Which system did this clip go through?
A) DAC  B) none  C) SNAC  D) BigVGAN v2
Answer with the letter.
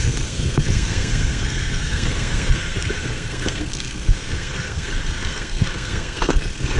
C